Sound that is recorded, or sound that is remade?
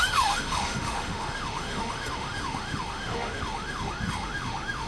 remade